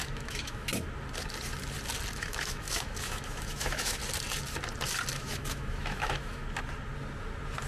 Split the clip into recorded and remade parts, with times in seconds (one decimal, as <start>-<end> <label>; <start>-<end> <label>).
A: 0.0-0.7 remade; 0.7-2.2 recorded; 2.2-4.0 remade; 4.0-5.1 recorded; 5.1-6.4 remade; 6.4-7.7 recorded